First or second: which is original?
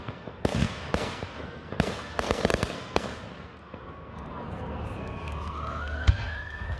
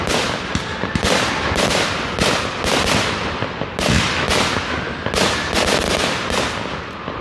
second